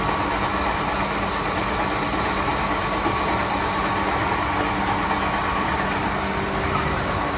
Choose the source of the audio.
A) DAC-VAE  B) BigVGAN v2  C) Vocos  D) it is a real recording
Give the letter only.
D